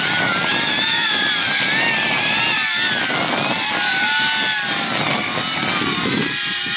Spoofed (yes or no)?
no